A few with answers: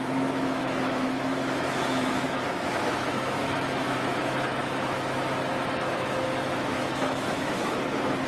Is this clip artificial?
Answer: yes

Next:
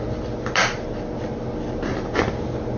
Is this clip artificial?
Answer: no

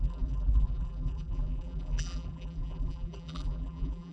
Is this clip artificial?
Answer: yes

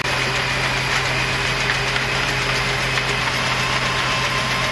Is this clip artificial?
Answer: no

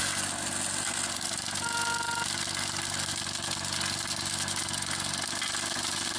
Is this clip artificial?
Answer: no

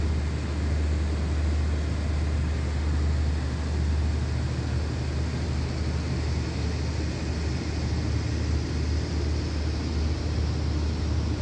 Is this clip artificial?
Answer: no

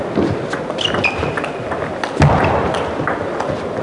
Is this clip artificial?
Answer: no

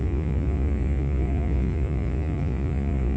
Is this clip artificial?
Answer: yes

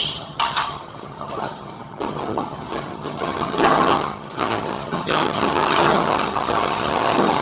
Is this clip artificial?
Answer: yes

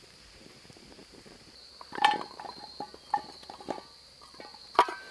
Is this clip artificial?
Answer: yes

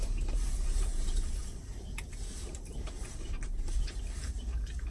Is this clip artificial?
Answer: yes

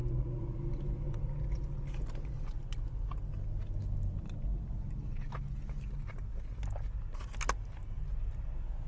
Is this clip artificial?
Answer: no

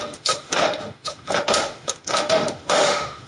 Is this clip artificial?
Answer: yes